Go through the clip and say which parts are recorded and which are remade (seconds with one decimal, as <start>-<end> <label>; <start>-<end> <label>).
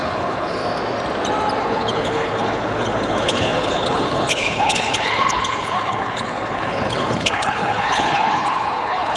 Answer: 0.0-0.6 remade; 0.6-1.6 recorded; 1.6-9.2 remade